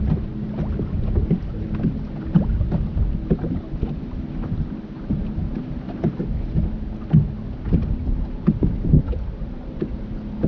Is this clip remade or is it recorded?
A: recorded